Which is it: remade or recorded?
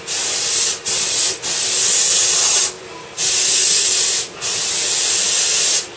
recorded